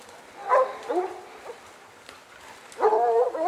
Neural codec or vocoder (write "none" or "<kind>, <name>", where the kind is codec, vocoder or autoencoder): none